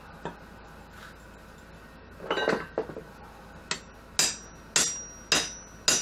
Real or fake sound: real